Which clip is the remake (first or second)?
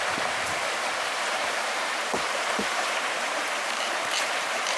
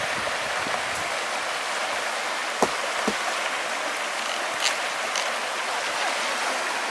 first